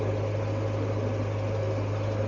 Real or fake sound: real